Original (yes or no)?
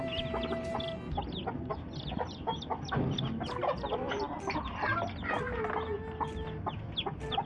yes